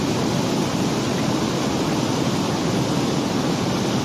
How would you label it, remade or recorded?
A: recorded